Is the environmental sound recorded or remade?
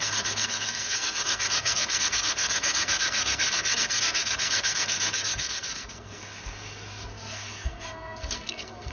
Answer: remade